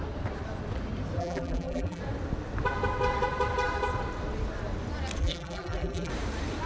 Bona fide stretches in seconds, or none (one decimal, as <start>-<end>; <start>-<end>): 0.0-1.2; 2.0-5.2; 6.1-6.7